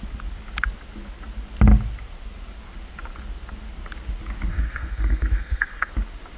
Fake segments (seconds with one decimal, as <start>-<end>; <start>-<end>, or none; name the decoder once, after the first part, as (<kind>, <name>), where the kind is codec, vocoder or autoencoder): 4.5-5.9 (codec, SNAC)